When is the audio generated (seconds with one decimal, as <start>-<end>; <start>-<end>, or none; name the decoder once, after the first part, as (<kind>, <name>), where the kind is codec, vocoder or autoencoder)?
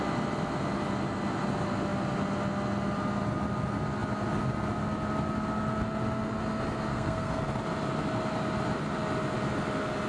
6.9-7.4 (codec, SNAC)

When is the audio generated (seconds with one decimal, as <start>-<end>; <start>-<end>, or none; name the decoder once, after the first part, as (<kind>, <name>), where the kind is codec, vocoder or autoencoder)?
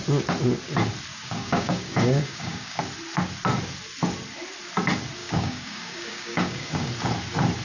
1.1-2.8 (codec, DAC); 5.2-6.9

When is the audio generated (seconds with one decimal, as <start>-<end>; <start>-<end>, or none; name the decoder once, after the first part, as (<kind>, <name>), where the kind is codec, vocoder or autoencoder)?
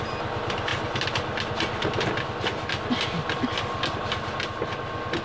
none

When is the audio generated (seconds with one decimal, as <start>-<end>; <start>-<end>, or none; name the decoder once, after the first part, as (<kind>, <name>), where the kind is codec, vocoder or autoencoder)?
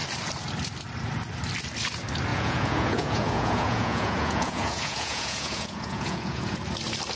2.3-6.6 (vocoder, Vocos)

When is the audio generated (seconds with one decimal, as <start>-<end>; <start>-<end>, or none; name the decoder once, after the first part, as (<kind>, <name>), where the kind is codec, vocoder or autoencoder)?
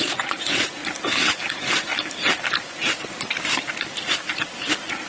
0.0-0.8 (vocoder, Vocos); 1.5-1.9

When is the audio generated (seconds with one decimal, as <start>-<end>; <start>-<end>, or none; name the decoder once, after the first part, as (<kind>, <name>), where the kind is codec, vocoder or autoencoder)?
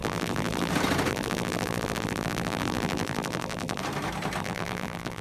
0.0-0.7 (vocoder, BigVGAN v2); 1.1-3.8; 4.4-5.2